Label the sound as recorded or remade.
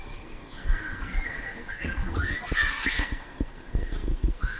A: remade